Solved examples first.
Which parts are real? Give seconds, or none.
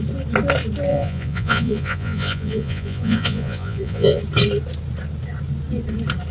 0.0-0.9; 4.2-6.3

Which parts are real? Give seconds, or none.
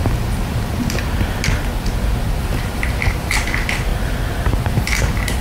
1.0-2.5; 3.4-3.9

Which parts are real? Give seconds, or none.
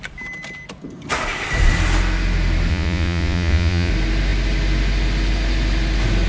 0.0-2.7; 3.9-6.3